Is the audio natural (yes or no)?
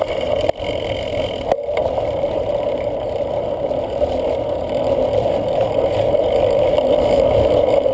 yes